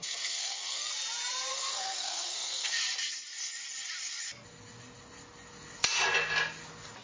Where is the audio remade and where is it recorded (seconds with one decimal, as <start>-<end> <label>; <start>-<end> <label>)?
0.0-0.9 remade; 0.9-1.5 recorded; 1.5-2.8 remade; 2.8-7.0 recorded